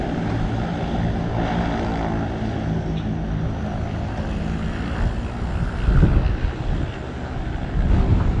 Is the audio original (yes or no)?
yes